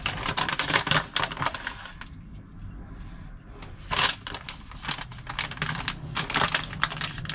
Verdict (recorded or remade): remade